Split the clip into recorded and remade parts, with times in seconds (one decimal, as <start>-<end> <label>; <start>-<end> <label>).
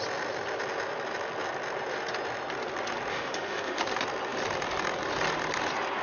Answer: 0.0-3.1 recorded; 3.1-3.8 remade; 3.8-6.0 recorded